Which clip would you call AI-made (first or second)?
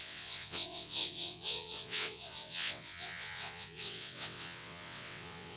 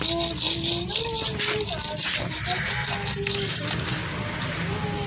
first